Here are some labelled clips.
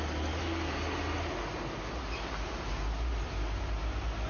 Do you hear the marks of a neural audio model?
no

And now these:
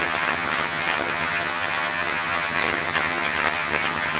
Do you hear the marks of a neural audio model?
yes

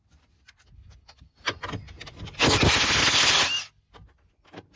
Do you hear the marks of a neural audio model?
no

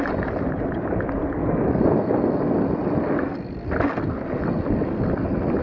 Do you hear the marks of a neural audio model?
no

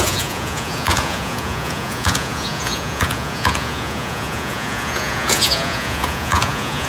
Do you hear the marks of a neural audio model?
yes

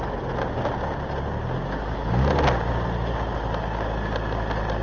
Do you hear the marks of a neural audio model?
no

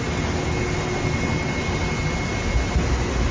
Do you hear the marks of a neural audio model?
no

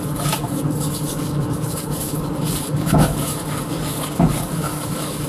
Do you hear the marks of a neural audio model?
yes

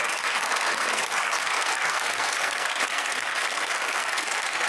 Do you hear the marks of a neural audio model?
yes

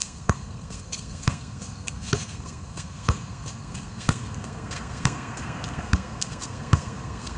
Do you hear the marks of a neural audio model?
yes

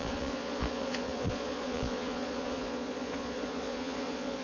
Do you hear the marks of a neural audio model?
yes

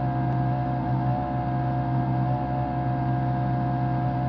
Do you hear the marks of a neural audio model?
no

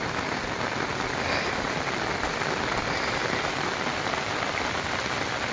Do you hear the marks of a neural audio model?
no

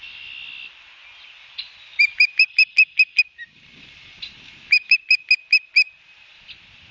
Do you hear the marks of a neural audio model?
no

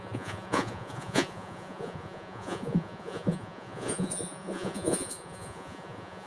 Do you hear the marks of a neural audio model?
yes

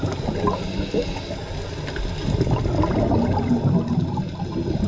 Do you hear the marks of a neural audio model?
no